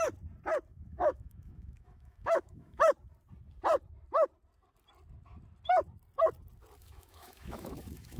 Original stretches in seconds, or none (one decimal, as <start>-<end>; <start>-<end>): 0.0-0.7; 2.8-6.8

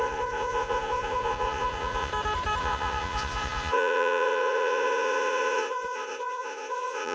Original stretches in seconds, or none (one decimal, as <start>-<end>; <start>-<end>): 2.1-2.6

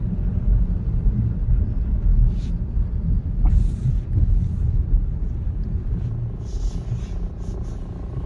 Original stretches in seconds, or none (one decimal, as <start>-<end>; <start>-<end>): 0.0-8.3

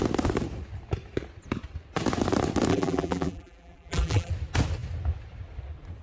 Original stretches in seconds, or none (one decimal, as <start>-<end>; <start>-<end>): 0.0-2.7; 4.3-6.0